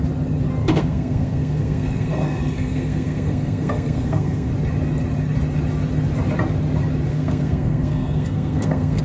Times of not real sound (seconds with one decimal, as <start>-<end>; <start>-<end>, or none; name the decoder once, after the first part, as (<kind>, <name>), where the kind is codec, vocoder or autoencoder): 0.6-4.5 (codec, SNAC); 7.1-9.0